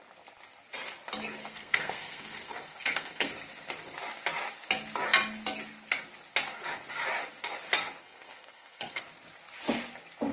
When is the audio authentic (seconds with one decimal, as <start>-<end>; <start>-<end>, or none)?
0.0-1.4; 3.3-8.0; 9.0-10.3